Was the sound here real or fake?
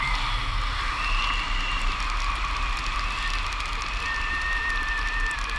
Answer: real